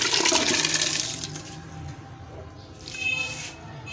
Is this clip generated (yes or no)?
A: no